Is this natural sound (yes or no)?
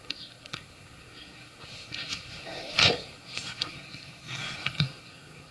no